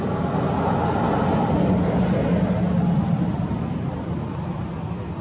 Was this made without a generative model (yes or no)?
yes